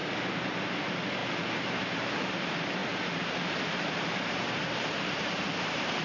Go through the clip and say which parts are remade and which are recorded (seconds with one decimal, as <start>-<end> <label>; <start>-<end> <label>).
0.0-1.2 recorded; 1.2-2.4 remade; 2.4-2.8 recorded; 2.8-6.0 remade